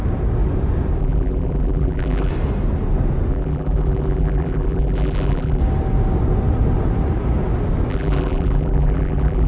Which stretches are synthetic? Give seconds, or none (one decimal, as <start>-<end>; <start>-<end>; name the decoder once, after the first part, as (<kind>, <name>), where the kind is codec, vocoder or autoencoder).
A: 1.0-2.3 (vocoder, BigVGAN v2); 3.3-5.6; 7.9-9.5